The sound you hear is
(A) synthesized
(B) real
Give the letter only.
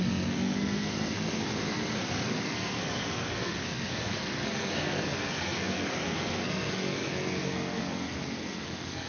A